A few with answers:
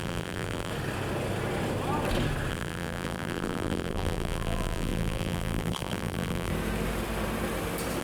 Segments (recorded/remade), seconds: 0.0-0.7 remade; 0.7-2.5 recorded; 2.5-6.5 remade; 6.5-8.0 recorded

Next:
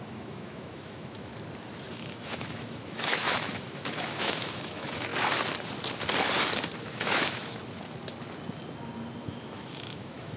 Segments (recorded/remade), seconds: 0.0-1.3 remade; 1.3-1.9 recorded; 1.9-5.1 remade; 5.1-6.8 recorded; 6.8-7.6 remade; 7.6-9.2 recorded; 9.2-10.4 remade

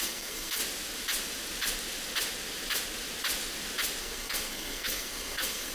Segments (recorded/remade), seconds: 0.0-0.6 remade; 0.6-4.0 recorded; 4.0-5.7 remade

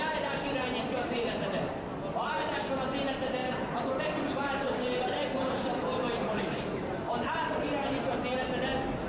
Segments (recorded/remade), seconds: 0.0-3.4 recorded; 3.4-8.0 remade; 8.0-9.1 recorded

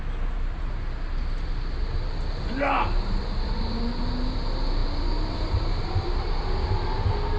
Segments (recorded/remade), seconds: 0.0-4.8 recorded; 4.8-6.4 remade; 6.4-7.4 recorded